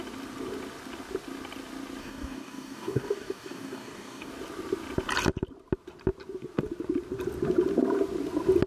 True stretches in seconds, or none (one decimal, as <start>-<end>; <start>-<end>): 0.0-2.0; 4.3-8.7